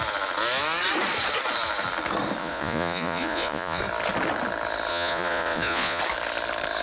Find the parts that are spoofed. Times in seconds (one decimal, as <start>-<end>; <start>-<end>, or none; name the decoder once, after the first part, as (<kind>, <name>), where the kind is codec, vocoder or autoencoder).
2.4-3.8 (vocoder, Vocos); 4.9-6.0